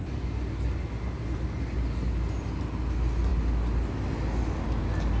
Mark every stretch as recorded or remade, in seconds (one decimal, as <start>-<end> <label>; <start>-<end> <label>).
0.0-5.2 recorded